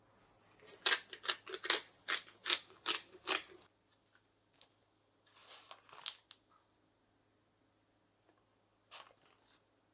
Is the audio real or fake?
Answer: real